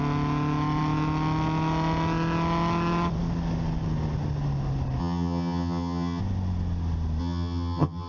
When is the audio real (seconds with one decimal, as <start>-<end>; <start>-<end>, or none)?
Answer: 0.0-5.0; 6.2-7.2